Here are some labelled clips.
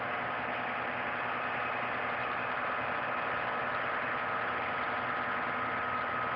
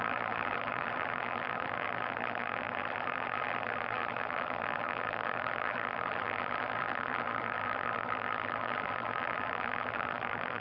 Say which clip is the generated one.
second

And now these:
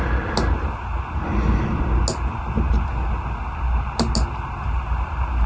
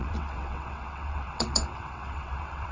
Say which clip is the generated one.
second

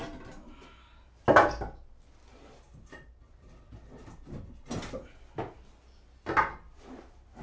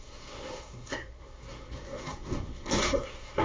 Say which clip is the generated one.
second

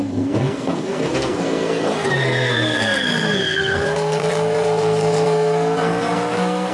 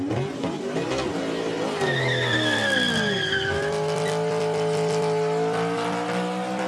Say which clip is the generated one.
first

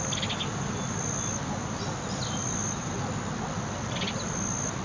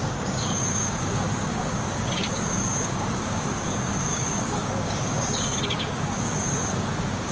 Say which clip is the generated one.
second